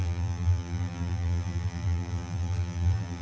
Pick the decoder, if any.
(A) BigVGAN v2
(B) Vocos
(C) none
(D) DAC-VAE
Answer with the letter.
A